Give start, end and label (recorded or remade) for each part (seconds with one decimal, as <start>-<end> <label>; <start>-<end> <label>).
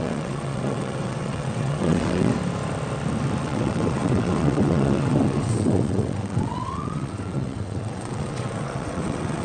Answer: 0.0-2.3 remade; 2.3-3.4 recorded; 3.4-9.4 remade